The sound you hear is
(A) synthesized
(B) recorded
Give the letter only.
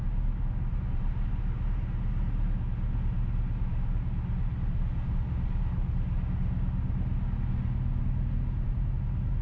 B